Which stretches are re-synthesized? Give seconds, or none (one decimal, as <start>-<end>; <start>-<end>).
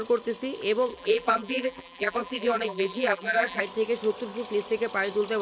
0.9-3.6